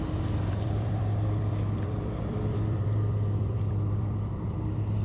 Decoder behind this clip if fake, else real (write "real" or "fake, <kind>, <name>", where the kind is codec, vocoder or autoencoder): fake, vocoder, BigVGAN v2